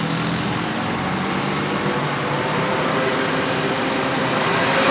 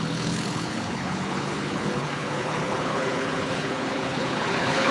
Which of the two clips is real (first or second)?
first